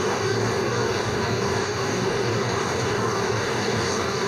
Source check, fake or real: fake